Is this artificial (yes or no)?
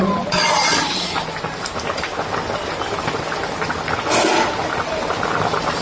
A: no